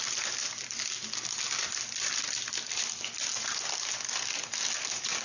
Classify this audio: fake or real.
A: real